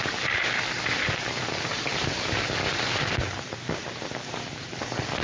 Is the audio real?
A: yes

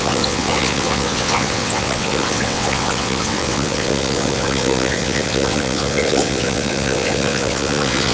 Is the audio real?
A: no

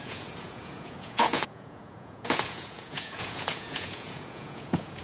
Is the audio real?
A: no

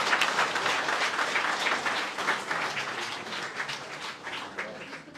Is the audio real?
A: yes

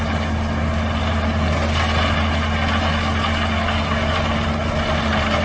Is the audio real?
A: yes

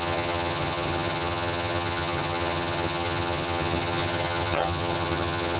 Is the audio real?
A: no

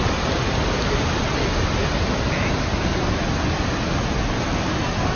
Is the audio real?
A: yes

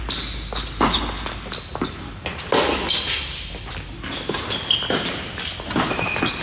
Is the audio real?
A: yes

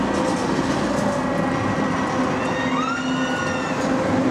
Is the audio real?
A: yes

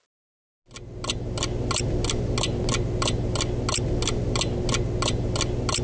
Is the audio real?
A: yes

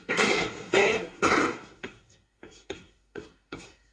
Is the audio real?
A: no